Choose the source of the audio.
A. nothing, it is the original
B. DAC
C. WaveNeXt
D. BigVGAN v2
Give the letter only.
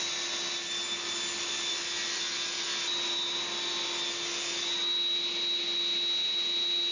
A